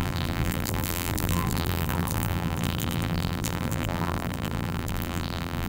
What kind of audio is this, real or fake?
fake